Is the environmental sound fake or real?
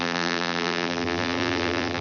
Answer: fake